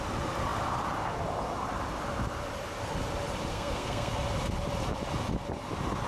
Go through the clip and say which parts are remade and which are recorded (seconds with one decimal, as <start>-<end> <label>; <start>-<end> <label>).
0.0-3.5 recorded; 3.5-4.1 remade; 4.1-6.1 recorded